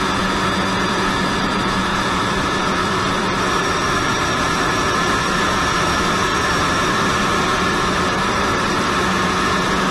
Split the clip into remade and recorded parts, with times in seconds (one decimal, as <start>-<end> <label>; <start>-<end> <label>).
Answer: 0.0-2.8 remade; 2.8-4.0 recorded; 4.0-6.3 remade; 6.3-9.1 recorded; 9.1-9.9 remade